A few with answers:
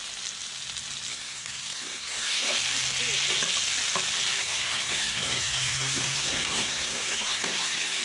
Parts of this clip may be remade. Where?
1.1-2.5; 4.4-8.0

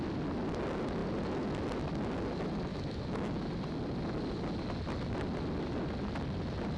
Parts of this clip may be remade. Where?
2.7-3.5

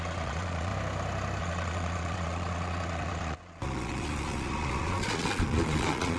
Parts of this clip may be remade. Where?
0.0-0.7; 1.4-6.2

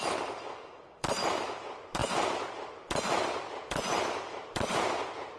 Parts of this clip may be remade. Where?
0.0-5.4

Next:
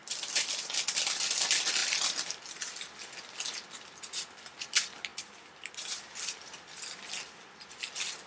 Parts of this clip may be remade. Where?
0.0-1.4; 1.8-2.7; 5.1-7.0

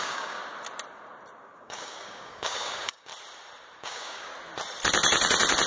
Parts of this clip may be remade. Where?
0.0-0.4; 1.4-3.1; 3.8-4.3

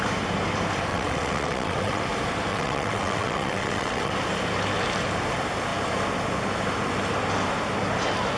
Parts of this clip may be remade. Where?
0.9-2.0; 2.5-4.1

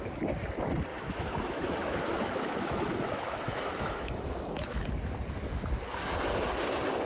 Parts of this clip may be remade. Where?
0.9-4.9